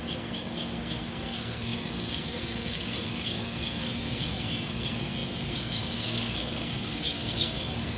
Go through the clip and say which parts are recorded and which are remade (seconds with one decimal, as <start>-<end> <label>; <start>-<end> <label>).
0.0-8.0 remade